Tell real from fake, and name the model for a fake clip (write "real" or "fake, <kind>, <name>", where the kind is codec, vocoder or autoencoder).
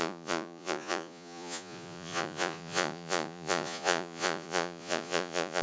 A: fake, vocoder, Vocos